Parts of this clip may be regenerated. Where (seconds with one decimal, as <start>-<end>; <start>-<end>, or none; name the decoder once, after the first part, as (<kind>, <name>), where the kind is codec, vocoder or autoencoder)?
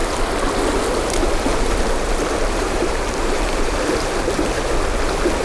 1.5-4.7 (vocoder, BigVGAN v2)